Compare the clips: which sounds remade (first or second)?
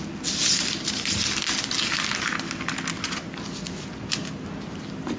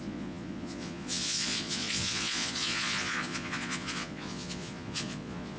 second